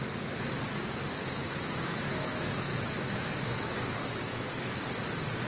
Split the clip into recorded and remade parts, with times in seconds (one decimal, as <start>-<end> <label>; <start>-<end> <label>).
0.0-1.2 recorded; 1.2-4.5 remade; 4.5-5.5 recorded